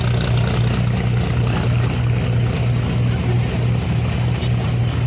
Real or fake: real